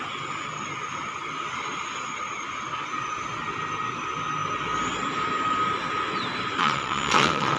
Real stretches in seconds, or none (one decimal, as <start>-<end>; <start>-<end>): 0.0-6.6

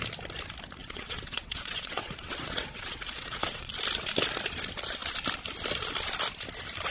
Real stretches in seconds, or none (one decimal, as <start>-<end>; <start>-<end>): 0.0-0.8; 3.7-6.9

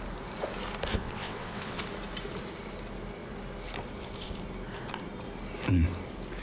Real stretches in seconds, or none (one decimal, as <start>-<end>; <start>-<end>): 0.0-1.0; 1.8-6.4

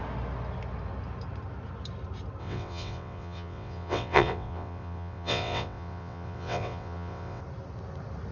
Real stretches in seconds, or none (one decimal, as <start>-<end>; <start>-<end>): 0.0-2.4; 7.4-8.3

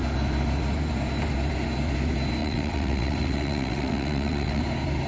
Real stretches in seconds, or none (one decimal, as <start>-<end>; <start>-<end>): 0.0-2.4; 4.6-5.1

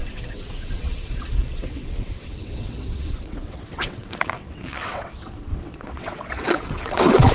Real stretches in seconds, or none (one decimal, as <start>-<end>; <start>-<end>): none

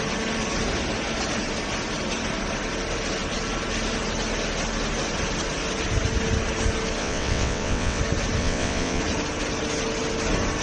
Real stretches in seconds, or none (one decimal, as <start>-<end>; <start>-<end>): 0.0-7.0; 8.0-8.4; 9.0-10.6